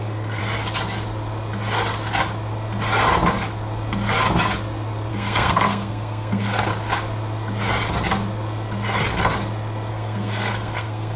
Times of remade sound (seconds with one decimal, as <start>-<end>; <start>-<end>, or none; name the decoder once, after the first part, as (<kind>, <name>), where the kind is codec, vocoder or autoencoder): 0.0-0.4 (codec, SNAC); 5.1-6.7; 9.9-11.2